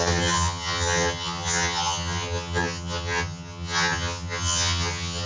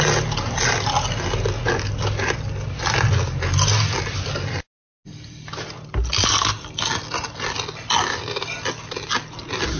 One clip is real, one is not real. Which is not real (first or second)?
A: first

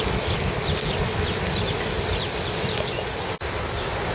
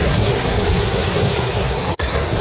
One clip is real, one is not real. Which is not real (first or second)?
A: second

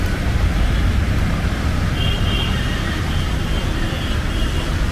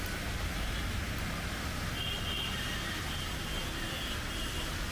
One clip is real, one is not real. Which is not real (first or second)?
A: first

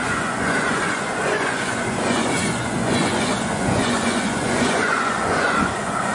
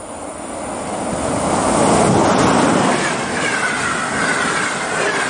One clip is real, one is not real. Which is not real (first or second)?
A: first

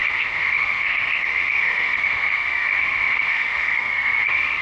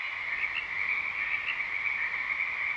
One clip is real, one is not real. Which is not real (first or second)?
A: first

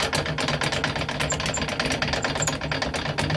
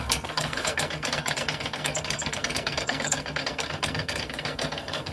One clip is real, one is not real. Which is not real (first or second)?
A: second